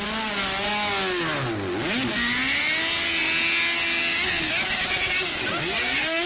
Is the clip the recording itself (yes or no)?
yes